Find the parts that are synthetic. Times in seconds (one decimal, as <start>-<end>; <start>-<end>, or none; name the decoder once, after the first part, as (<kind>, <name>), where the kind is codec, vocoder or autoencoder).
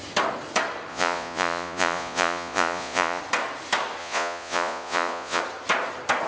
0.9-3.2 (vocoder, Vocos); 4.0-5.4